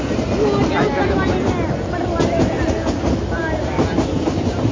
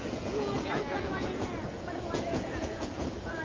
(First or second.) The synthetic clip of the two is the second